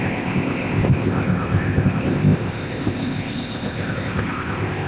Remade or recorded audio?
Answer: remade